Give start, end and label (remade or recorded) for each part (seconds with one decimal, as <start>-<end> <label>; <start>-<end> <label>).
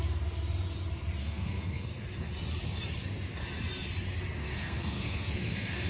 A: 0.0-1.2 recorded; 1.2-1.9 remade; 1.9-4.4 recorded; 4.4-5.9 remade